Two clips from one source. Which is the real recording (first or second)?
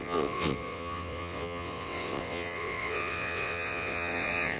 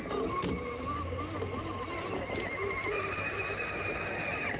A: second